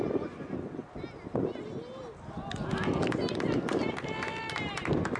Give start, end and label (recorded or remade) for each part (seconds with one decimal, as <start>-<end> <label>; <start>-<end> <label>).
0.0-5.2 recorded

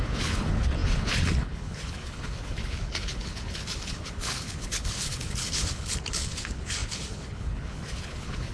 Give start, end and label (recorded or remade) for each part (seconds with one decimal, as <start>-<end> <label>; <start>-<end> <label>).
0.0-8.5 remade

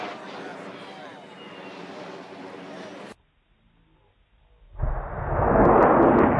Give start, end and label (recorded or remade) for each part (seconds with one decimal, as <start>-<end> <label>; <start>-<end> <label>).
0.0-6.4 recorded